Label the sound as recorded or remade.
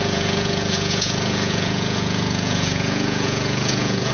remade